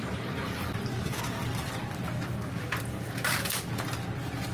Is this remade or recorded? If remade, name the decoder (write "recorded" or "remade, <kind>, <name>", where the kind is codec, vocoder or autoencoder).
remade, vocoder, BigVGAN v2